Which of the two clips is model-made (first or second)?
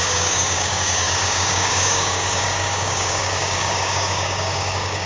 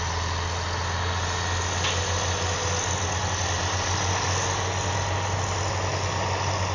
first